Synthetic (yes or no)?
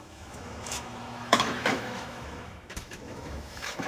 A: yes